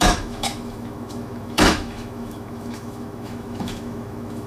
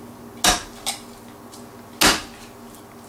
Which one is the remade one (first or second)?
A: first